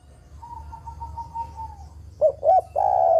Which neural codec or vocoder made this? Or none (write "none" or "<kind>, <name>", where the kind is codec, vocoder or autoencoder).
none